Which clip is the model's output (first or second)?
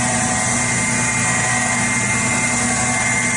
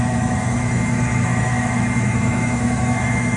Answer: second